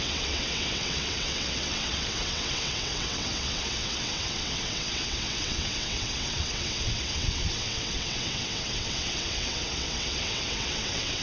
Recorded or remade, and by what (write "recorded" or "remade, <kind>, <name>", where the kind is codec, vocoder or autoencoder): remade, vocoder, WaveNeXt